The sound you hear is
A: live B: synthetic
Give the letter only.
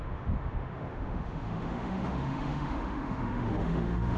B